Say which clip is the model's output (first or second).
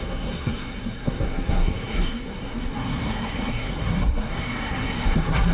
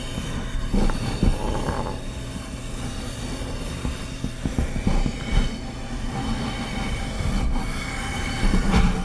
first